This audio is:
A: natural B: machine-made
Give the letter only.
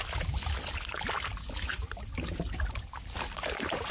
A